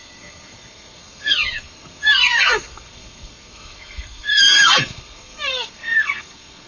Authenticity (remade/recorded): remade